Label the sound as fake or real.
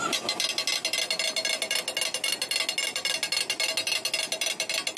real